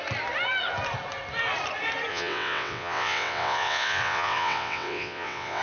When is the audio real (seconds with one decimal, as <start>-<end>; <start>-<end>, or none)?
0.0-2.1